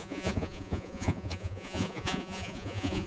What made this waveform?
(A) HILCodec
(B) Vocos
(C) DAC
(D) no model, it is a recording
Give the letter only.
B